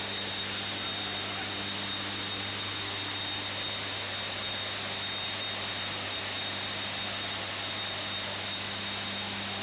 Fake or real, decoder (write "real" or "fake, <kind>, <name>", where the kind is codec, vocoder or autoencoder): real